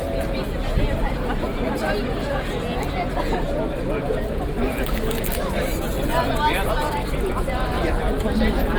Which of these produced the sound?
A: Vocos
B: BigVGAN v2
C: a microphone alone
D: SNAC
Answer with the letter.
C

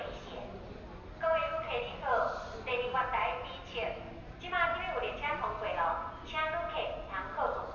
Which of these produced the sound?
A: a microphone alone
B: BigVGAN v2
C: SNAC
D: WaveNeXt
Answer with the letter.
A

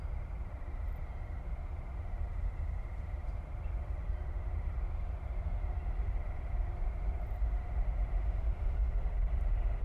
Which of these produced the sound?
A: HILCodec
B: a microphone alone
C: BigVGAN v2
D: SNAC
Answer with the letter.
B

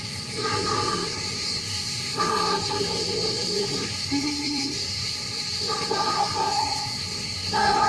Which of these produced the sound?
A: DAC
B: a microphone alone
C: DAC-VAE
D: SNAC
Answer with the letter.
D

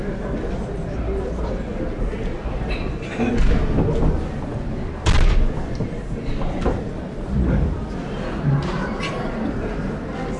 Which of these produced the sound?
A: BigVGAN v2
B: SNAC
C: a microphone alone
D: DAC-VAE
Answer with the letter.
C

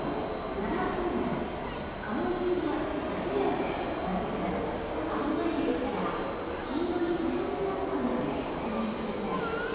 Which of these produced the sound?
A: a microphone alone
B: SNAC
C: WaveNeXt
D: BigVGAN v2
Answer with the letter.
A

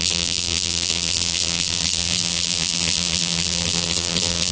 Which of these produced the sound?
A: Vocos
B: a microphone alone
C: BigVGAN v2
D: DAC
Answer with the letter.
C